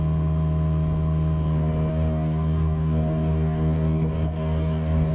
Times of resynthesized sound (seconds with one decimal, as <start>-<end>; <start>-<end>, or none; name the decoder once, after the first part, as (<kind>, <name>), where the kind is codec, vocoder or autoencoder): 1.9-5.1 (codec, DAC)